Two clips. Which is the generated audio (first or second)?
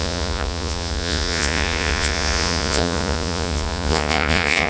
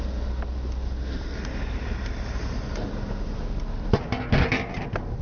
first